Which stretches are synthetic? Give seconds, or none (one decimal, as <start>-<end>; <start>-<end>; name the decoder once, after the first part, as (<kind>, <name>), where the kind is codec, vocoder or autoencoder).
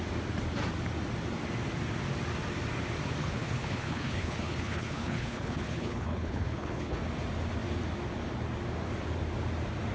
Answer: 3.2-7.0 (codec, HILCodec)